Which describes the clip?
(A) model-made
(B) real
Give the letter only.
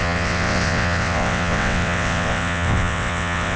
A